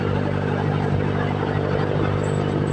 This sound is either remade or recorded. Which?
recorded